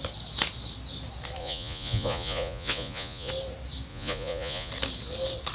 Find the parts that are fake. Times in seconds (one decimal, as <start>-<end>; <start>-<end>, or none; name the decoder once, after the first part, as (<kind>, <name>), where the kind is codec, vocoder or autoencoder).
1.4-3.3 (vocoder, Vocos); 3.9-4.7